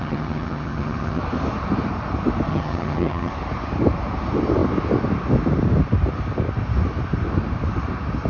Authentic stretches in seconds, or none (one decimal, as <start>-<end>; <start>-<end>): 1.2-2.5; 3.3-8.3